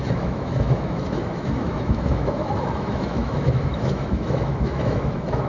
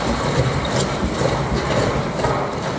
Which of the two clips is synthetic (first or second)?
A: first